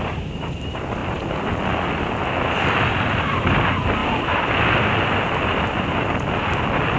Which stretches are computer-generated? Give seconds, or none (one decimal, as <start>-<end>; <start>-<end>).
none